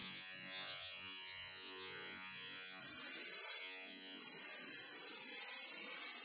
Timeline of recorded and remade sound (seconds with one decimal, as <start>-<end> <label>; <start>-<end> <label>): 0.0-2.8 remade; 2.8-3.6 recorded; 3.6-4.2 remade; 4.2-6.2 recorded